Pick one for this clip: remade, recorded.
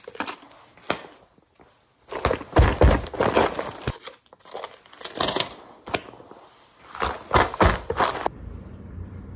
recorded